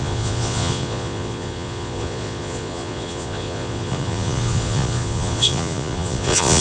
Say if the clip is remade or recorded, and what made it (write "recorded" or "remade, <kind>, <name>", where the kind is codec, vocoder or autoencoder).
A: remade, vocoder, Vocos